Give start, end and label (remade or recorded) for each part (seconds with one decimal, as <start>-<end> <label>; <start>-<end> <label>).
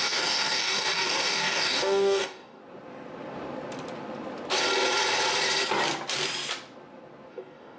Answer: 0.0-2.6 remade; 2.6-7.3 recorded; 7.3-7.8 remade